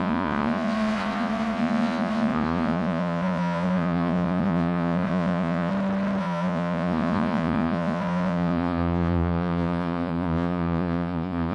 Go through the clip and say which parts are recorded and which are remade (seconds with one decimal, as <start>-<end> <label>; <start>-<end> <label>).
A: 0.0-5.7 remade; 5.7-6.2 recorded; 6.2-11.5 remade